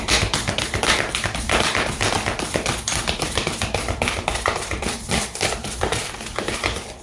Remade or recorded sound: remade